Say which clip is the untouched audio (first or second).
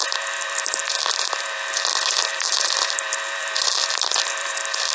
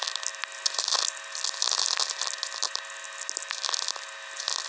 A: second